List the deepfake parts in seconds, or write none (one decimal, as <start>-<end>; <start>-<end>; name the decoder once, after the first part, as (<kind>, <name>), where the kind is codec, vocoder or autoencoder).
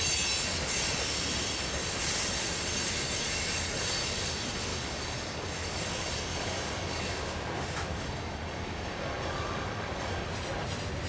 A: 4.7-7.0 (codec, DAC); 7.9-10.3